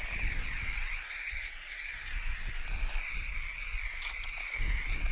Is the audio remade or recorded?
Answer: recorded